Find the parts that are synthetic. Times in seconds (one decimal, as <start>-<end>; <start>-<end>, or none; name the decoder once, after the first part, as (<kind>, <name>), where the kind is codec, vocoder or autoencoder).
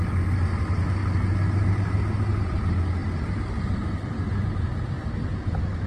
3.0-3.6 (vocoder, BigVGAN v2)